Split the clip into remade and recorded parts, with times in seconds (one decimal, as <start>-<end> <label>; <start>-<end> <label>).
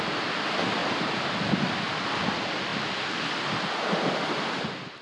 0.0-5.0 recorded